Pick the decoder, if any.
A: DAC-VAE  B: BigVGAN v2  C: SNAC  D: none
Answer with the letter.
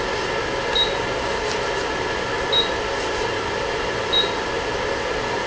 D